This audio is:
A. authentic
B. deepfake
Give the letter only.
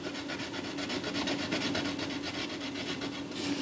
A